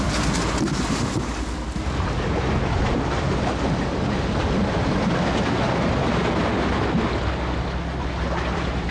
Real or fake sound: real